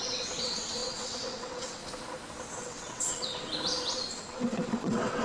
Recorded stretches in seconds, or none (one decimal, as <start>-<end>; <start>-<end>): 1.8-2.6; 3.5-4.1